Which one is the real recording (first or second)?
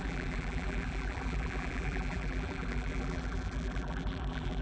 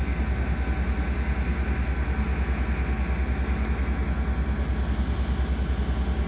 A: second